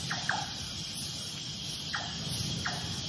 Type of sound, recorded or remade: recorded